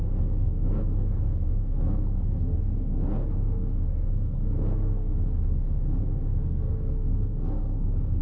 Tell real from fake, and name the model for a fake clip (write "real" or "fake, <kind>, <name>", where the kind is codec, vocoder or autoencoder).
fake, codec, SNAC